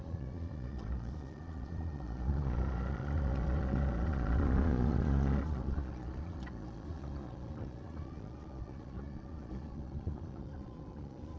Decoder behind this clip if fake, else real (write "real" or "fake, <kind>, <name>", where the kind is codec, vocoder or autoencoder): fake, vocoder, Vocos